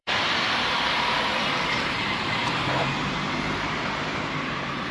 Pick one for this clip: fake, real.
fake